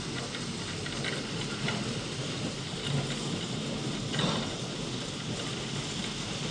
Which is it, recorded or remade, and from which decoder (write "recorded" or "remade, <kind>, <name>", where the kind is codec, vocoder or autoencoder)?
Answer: recorded